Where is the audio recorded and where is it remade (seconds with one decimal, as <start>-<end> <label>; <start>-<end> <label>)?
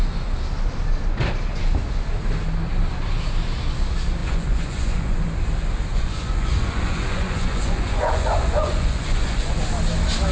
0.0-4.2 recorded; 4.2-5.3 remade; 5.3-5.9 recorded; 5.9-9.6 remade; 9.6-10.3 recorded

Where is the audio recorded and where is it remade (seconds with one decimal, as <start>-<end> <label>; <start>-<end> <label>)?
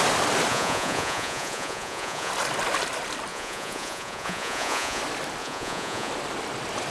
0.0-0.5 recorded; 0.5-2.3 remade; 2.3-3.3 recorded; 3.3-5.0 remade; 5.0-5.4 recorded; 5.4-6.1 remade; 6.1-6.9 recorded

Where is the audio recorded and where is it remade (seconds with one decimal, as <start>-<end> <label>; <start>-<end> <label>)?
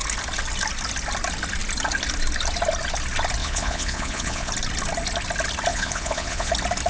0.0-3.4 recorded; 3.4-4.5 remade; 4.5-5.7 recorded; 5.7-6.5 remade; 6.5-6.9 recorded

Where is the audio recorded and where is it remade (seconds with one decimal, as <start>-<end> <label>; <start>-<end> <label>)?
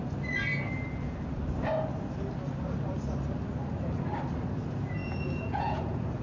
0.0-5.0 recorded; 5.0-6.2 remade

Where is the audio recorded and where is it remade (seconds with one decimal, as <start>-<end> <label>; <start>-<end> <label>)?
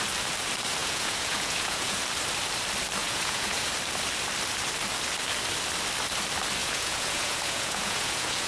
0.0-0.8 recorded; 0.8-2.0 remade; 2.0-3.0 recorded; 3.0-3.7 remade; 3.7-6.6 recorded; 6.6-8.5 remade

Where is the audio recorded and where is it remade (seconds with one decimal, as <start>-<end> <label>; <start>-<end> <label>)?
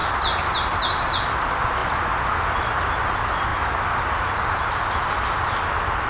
0.0-6.1 recorded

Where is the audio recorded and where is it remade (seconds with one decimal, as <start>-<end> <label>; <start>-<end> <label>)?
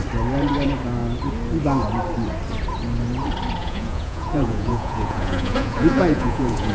0.0-3.6 recorded; 3.6-6.7 remade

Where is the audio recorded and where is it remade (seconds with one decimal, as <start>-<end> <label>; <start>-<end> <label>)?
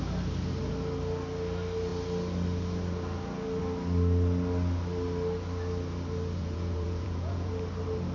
0.0-6.4 recorded; 6.4-7.5 remade; 7.5-8.1 recorded